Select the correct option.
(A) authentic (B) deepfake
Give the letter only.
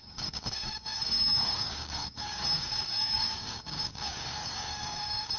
B